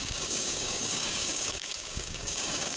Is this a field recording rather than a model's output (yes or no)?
no